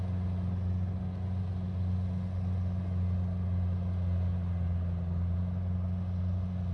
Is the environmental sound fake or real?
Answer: real